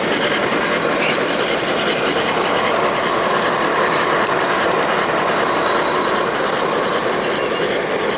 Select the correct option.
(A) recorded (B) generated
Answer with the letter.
A